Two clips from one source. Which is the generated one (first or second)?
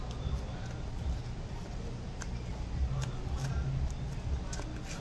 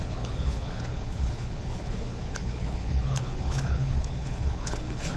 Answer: second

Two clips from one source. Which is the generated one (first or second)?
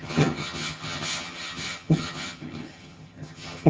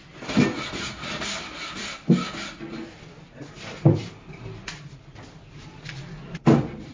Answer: first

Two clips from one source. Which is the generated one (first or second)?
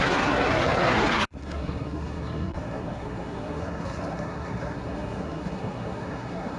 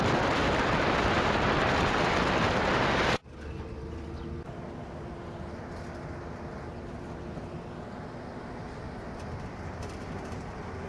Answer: first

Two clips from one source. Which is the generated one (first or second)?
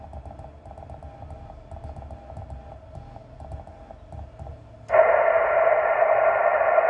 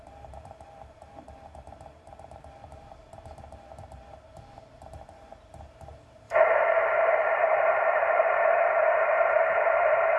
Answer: second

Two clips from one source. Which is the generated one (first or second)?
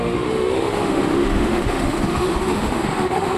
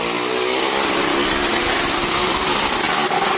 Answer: first